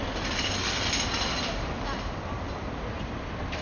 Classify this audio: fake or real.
real